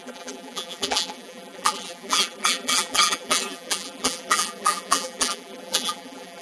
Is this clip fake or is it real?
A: fake